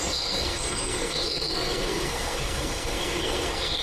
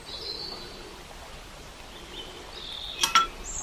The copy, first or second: first